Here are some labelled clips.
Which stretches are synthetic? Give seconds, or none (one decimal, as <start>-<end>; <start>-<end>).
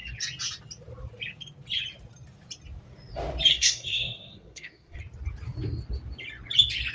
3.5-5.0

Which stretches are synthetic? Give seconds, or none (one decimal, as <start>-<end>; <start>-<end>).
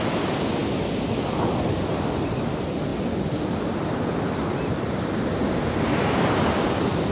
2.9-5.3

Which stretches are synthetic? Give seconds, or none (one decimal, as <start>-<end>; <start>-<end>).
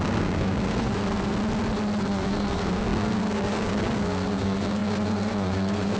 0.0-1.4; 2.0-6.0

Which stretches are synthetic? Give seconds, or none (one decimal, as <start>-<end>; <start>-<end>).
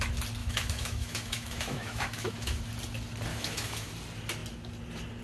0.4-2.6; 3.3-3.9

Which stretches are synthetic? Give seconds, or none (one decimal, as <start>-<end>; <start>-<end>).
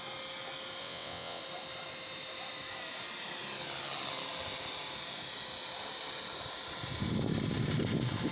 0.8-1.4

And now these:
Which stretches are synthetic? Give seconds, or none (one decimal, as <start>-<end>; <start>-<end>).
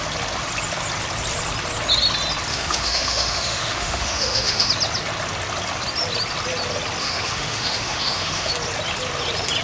2.5-4.7; 7.0-8.5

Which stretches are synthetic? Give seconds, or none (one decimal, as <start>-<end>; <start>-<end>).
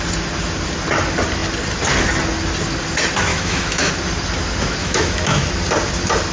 3.3-3.9; 4.8-5.5